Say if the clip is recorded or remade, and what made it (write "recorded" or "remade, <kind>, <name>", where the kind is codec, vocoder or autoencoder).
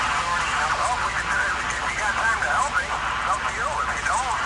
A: recorded